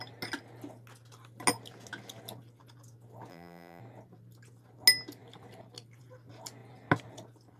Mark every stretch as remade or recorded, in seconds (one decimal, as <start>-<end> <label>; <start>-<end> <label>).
0.0-3.3 recorded; 3.3-3.8 remade; 3.8-7.6 recorded